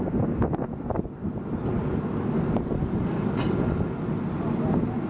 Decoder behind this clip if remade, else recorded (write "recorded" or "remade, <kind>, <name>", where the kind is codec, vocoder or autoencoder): recorded